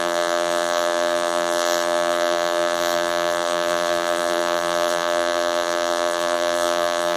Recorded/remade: remade